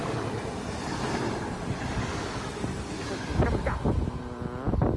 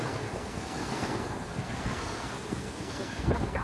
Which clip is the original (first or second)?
first